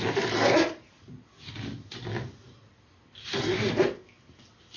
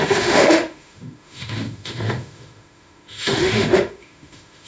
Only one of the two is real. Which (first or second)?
first